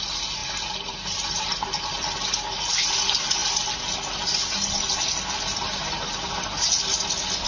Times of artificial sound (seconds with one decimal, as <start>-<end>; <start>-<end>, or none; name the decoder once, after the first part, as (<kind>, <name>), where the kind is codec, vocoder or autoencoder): none